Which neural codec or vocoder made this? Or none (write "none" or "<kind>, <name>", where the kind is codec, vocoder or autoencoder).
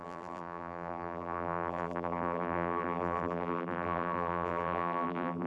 vocoder, BigVGAN v2